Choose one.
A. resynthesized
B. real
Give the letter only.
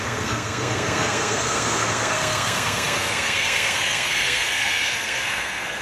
A